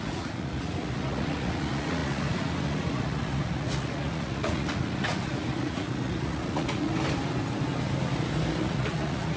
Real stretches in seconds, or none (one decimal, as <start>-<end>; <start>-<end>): 6.9-8.6